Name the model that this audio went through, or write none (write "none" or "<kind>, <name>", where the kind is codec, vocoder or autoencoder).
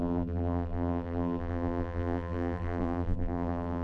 vocoder, BigVGAN v2